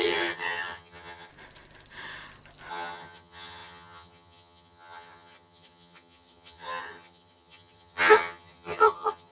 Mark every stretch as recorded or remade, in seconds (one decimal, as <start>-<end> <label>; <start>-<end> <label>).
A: 0.0-1.3 remade; 1.3-2.7 recorded; 2.7-9.3 remade